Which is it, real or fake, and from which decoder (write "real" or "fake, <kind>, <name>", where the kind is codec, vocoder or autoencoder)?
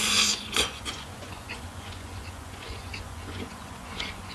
fake, vocoder, Vocos